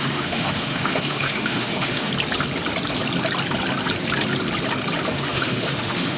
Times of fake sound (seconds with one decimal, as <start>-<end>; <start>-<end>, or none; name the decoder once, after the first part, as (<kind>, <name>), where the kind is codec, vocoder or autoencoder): 0.0-2.1 (autoencoder, DAC-VAE); 5.1-6.2